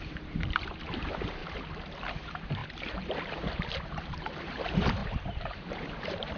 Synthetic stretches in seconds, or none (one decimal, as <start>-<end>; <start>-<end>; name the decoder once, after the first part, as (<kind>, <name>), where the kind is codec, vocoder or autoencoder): 0.0-1.4 (vocoder, BigVGAN v2); 2.1-6.4